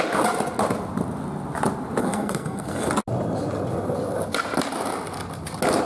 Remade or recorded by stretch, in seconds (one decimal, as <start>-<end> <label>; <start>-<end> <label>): 0.0-2.0 recorded; 2.0-2.9 remade; 2.9-5.8 recorded